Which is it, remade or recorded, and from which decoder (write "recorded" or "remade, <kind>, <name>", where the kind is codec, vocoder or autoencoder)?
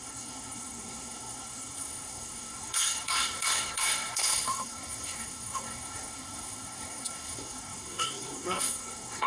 remade, codec, SNAC